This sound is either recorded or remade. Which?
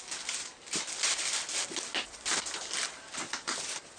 recorded